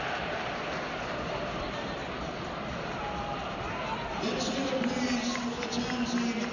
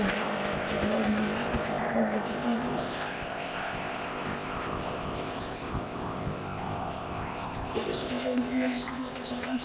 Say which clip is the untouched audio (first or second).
first